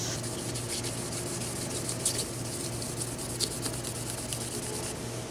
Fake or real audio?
real